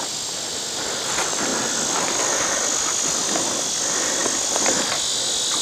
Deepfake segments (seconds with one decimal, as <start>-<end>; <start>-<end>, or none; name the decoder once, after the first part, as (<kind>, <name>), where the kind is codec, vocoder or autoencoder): none

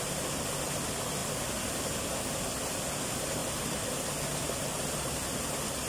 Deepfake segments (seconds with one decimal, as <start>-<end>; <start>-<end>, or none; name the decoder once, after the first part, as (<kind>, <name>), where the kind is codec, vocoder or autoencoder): none

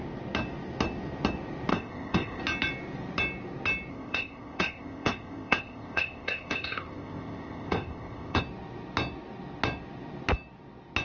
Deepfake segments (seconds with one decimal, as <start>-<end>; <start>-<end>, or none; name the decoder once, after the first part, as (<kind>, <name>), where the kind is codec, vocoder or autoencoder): 1.7-2.4 (codec, ZipCodec); 3.9-8.4

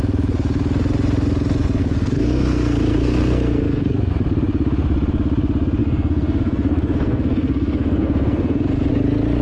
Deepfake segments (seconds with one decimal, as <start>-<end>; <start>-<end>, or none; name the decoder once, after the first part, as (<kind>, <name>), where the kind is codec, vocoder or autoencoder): 1.8-4.1 (codec, SNAC); 5.8-8.9

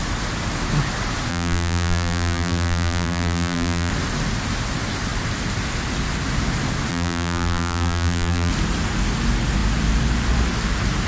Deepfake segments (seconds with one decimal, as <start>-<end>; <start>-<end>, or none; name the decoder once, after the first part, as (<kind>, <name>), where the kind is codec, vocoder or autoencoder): 1.3-3.9 (vocoder, BigVGAN v2); 6.9-8.5